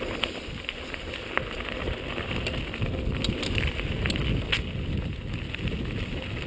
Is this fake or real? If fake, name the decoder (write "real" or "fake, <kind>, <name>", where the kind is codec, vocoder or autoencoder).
real